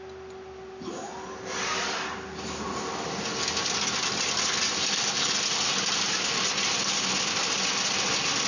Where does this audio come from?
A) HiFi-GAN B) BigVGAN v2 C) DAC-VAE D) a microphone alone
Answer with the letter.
D